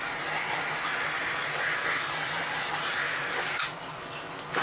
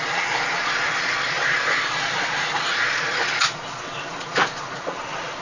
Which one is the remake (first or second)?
second